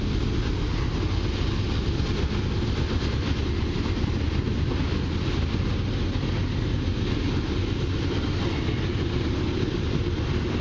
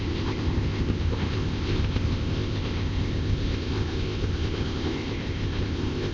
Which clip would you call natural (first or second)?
first